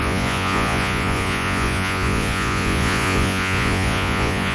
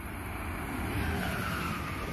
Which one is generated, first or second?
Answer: first